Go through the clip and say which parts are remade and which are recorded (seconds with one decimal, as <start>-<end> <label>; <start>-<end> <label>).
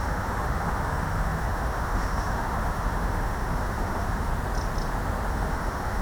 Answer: 0.0-4.3 remade; 4.3-5.3 recorded; 5.3-6.0 remade